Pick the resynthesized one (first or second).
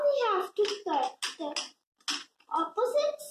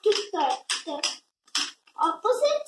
second